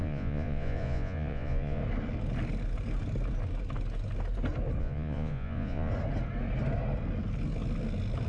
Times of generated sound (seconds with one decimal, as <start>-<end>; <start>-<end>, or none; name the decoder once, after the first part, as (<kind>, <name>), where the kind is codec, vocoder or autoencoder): 0.0-1.8 (vocoder, Vocos); 4.8-5.9